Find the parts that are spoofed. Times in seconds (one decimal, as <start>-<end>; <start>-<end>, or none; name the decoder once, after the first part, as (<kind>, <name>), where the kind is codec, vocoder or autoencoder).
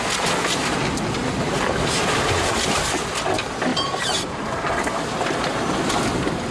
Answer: 3.7-4.7 (vocoder, BigVGAN v2)